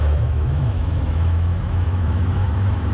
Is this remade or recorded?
remade